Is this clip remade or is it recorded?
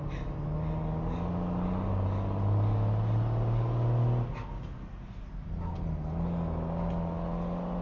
recorded